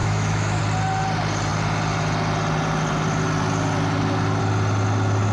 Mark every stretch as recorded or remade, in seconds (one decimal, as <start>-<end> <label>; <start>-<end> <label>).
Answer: 0.0-0.6 remade; 0.6-5.3 recorded